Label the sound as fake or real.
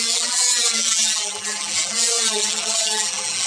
fake